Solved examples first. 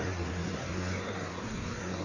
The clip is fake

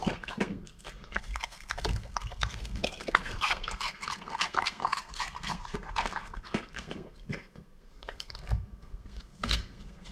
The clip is fake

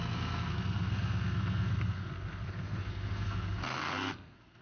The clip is fake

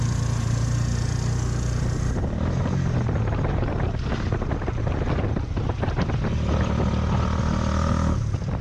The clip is real